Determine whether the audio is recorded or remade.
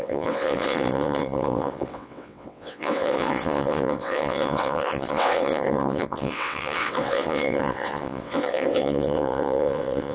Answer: remade